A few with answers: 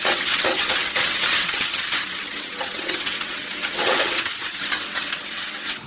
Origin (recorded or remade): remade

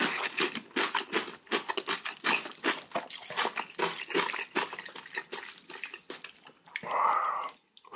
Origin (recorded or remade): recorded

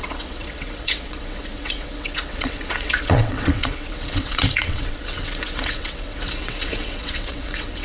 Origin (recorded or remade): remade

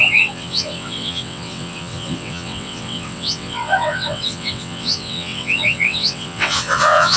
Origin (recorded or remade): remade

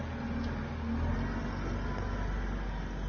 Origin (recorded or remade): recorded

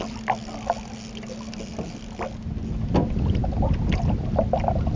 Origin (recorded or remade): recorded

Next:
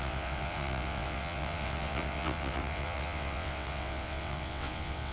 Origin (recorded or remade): remade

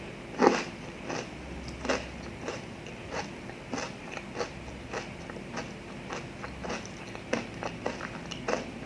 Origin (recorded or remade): recorded